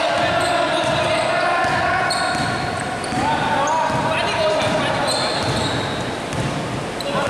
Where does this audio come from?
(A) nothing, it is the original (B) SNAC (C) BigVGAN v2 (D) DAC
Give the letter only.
A